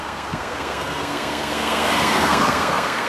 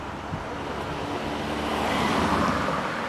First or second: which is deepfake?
first